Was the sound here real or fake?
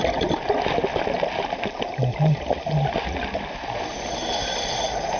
real